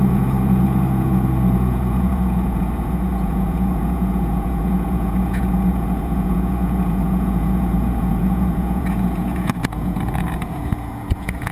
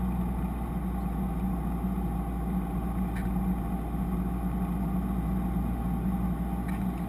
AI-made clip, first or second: first